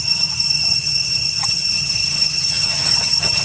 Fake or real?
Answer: fake